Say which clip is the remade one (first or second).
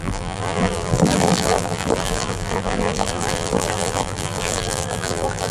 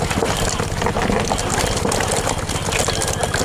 first